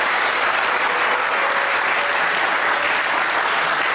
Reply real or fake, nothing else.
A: real